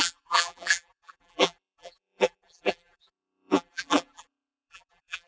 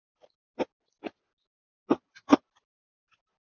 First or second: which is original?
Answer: second